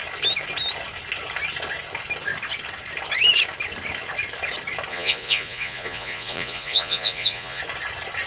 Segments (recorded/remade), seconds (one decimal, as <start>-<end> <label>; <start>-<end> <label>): 0.0-4.9 recorded; 4.9-7.6 remade; 7.6-8.3 recorded